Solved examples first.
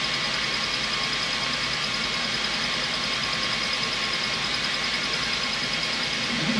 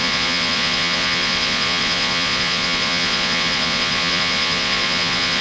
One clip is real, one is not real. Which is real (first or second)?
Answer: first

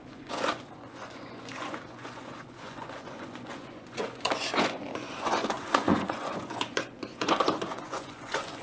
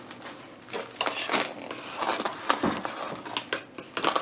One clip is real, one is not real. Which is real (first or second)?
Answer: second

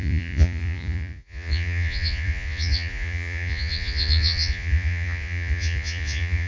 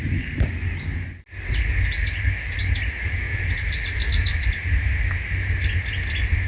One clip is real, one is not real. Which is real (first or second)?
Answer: second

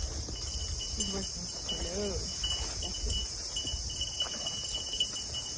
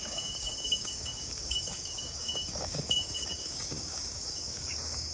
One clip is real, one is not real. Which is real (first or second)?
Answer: first